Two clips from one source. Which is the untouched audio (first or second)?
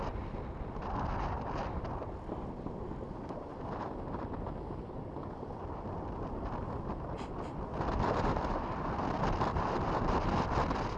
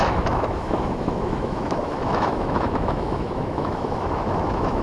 first